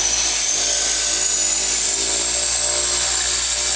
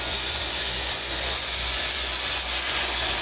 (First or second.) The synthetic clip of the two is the second